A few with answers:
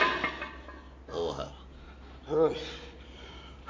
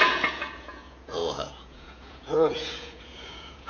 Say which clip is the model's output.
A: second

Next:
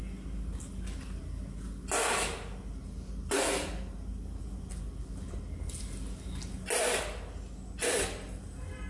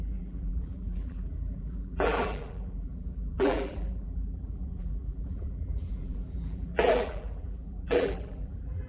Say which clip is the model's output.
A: second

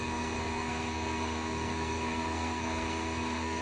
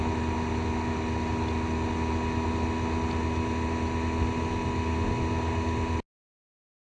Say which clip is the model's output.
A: first